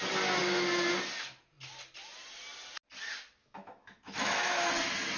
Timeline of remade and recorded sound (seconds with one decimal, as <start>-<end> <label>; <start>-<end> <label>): 0.0-3.4 recorded; 3.4-4.7 remade; 4.7-5.2 recorded

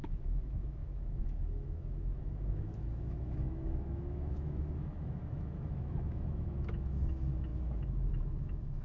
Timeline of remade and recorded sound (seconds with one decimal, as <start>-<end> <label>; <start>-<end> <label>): 0.0-8.8 remade

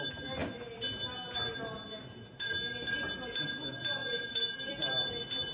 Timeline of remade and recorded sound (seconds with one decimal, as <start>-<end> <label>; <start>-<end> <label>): 0.0-4.0 recorded; 4.0-4.7 remade; 4.7-5.5 recorded

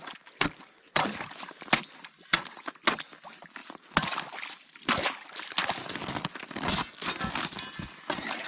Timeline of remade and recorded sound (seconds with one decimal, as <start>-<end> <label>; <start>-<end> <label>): 0.0-8.5 recorded